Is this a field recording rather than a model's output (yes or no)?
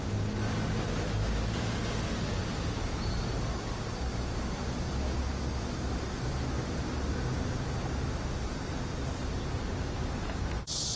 yes